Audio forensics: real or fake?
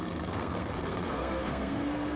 fake